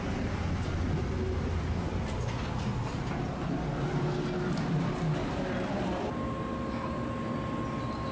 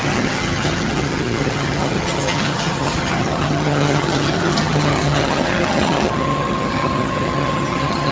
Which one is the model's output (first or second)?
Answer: second